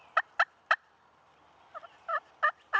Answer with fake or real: fake